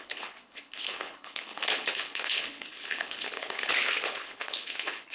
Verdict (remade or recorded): remade